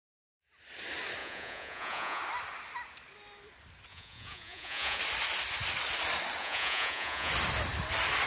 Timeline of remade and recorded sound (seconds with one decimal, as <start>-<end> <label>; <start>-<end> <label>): 0.0-1.2 recorded; 1.2-2.2 remade; 2.2-3.9 recorded; 3.9-5.0 remade; 5.0-6.4 recorded; 6.4-7.3 remade; 7.3-8.3 recorded